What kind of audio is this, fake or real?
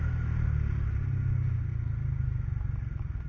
real